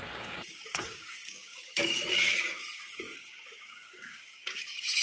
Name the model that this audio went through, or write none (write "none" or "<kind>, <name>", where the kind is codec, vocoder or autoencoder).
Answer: codec, DAC